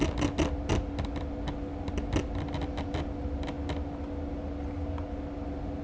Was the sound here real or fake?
real